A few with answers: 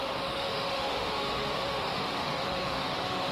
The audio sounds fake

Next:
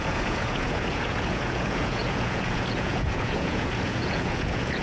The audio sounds fake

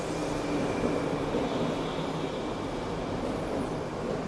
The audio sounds real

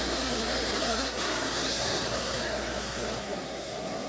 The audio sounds fake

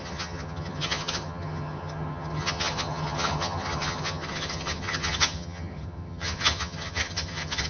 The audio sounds fake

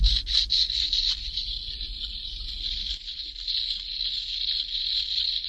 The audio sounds real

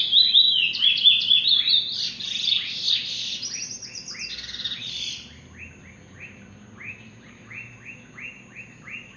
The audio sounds real